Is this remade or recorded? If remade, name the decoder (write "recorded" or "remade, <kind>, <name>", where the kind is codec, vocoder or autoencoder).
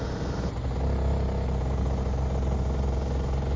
recorded